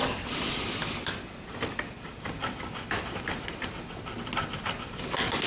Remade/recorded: recorded